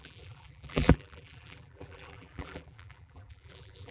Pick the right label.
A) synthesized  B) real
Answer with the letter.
A